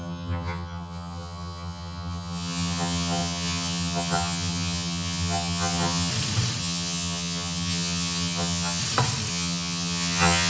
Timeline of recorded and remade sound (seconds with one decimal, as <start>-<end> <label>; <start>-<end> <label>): 0.0-6.1 remade; 6.1-6.6 recorded; 6.6-8.8 remade; 8.8-9.3 recorded; 9.3-10.5 remade